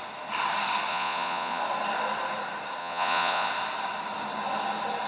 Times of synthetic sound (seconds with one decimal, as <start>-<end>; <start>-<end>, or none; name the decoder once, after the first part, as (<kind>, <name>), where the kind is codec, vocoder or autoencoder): 0.9-1.6 (vocoder, Vocos); 2.8-3.5